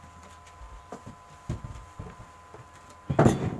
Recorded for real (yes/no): yes